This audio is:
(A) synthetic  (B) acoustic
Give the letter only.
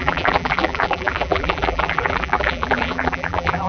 A